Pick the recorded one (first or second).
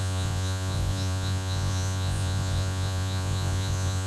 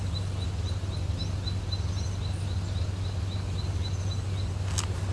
second